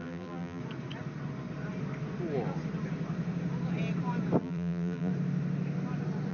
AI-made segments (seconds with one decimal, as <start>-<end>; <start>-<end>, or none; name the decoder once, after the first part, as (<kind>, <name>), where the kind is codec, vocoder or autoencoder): 0.0-0.6 (vocoder, BigVGAN v2); 4.4-5.1